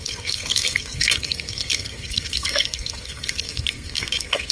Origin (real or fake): fake